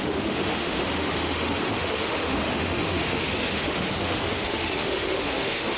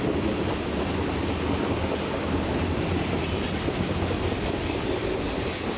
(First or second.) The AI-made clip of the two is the first